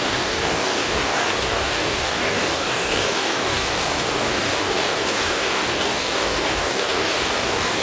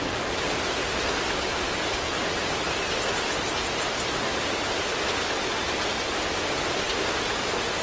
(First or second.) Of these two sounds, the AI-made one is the first